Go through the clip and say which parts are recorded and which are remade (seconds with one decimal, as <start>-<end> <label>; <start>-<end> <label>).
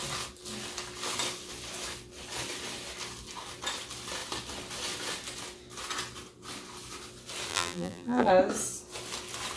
0.0-7.5 recorded; 7.5-8.3 remade; 8.3-9.6 recorded